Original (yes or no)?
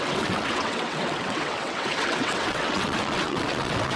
no